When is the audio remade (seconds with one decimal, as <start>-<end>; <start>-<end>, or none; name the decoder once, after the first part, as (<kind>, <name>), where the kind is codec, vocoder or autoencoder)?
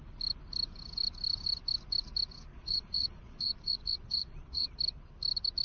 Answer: 2.5-4.8 (vocoder, Vocos)